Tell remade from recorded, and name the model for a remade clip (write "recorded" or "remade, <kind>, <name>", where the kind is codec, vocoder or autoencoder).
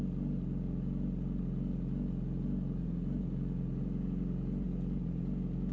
recorded